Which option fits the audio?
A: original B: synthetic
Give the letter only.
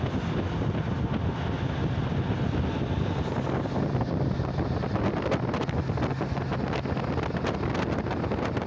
A